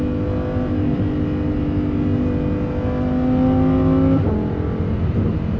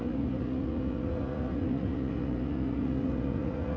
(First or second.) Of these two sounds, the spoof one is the second